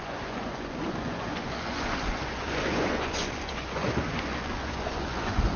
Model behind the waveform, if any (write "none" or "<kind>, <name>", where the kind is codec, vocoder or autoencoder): vocoder, Vocos